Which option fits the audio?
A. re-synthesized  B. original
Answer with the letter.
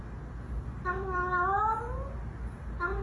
B